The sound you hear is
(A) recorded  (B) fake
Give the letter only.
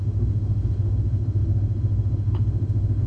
B